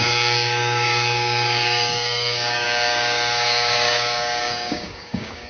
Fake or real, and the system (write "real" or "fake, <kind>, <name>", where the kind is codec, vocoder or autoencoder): fake, codec, DAC